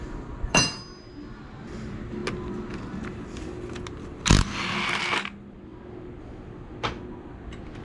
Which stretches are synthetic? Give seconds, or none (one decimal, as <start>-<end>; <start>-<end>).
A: none